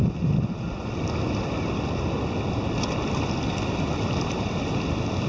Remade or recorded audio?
recorded